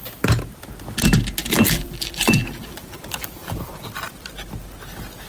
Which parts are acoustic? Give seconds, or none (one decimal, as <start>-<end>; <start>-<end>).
0.0-1.4; 3.7-5.3